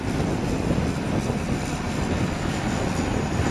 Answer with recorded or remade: recorded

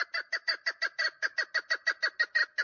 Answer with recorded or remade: recorded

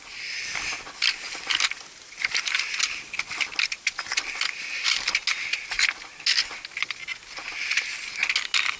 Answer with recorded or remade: recorded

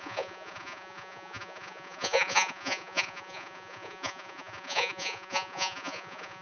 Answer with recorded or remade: remade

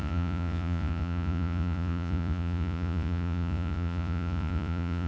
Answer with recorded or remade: remade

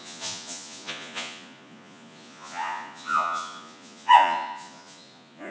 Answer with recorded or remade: remade